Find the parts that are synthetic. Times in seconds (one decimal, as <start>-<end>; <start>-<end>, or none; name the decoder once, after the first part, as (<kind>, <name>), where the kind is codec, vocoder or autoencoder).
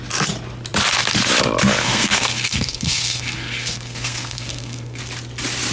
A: 1.8-5.0 (codec, SNAC)